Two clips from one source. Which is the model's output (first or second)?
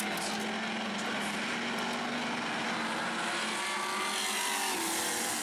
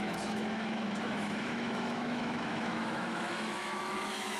second